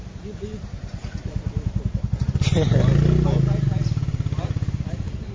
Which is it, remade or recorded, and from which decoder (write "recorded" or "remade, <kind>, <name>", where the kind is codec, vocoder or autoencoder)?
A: recorded